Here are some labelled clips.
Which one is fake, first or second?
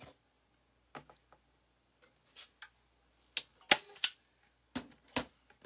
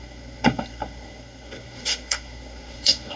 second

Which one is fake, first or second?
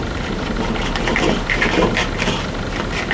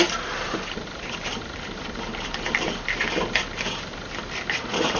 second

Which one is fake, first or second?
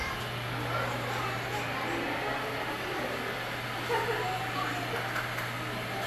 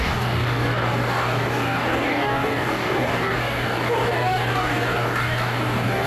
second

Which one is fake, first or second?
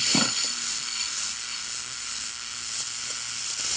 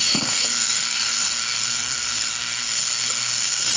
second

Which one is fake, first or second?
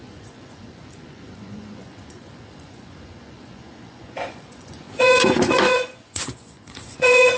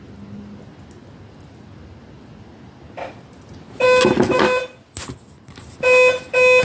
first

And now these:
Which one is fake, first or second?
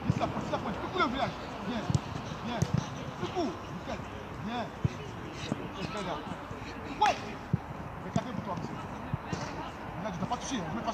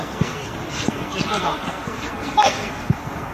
second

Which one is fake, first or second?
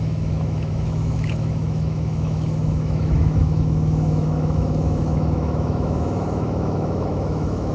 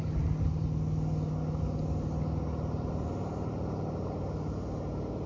first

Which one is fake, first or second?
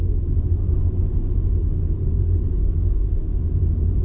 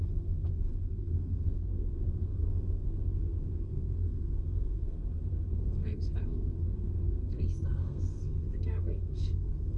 second